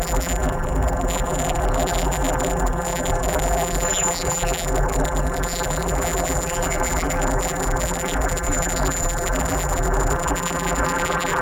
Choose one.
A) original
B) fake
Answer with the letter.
B